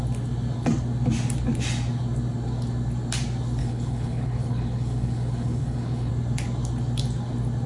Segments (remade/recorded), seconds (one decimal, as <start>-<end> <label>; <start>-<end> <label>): 0.0-3.6 recorded; 3.6-6.1 remade; 6.1-7.7 recorded